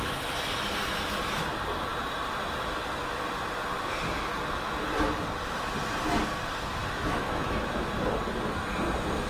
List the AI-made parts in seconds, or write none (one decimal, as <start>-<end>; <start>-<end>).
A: 6.8-7.9